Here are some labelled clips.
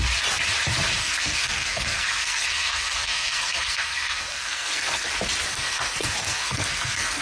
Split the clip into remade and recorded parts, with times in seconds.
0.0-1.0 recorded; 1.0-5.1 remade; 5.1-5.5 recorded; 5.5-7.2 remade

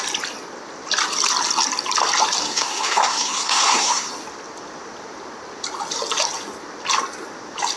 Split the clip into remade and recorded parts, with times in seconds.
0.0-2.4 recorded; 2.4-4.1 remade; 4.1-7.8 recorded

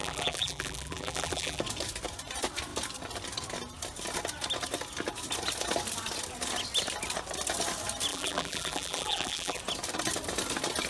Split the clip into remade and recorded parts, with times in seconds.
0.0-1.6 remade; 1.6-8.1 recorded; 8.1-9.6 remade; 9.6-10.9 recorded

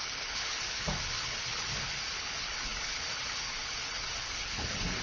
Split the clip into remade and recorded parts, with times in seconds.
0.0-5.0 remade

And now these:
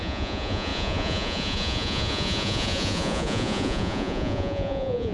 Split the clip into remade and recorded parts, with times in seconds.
0.0-5.1 remade

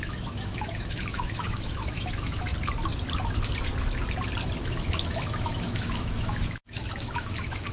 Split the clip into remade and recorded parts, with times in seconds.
0.0-2.5 remade; 2.5-4.6 recorded; 4.6-7.7 remade

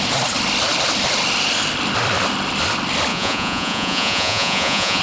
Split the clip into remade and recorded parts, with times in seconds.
0.0-3.1 recorded; 3.1-5.0 remade

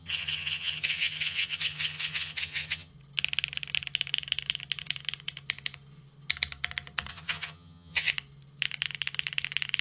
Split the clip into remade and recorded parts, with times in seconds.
0.0-2.9 remade; 2.9-7.1 recorded; 7.1-8.1 remade; 8.1-9.8 recorded